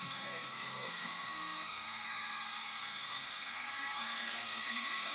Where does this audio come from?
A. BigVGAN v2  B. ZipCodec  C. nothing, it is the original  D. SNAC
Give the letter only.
D